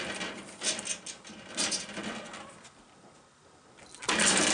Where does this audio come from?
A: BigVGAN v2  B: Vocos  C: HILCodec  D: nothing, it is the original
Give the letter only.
D